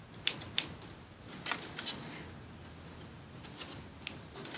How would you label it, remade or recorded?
recorded